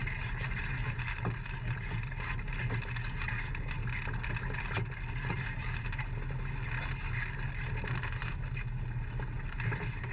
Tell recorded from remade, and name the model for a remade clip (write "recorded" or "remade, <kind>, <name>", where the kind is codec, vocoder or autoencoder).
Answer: recorded